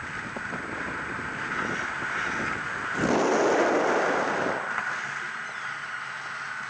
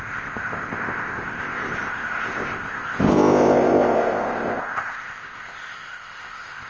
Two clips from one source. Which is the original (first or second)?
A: first